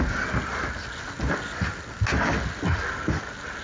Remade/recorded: recorded